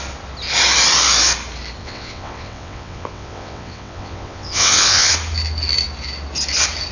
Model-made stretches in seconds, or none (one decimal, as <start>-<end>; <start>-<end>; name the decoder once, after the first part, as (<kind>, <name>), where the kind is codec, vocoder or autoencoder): 1.8-5.1 (vocoder, WaveNeXt)